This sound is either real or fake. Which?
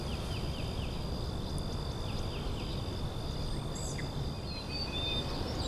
real